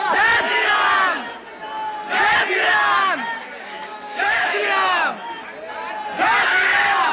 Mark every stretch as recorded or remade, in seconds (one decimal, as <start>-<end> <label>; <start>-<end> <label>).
0.0-3.4 recorded; 3.4-4.6 remade; 4.6-7.1 recorded